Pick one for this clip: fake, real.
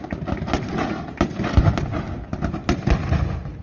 real